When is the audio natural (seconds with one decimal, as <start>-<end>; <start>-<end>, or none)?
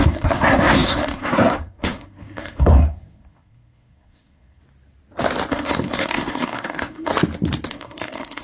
4.6-5.5; 7.1-7.7